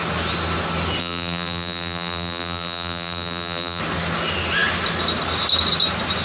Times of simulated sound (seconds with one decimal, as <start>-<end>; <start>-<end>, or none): 1.0-3.8